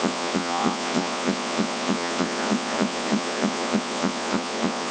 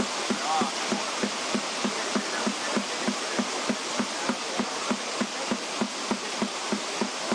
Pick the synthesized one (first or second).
first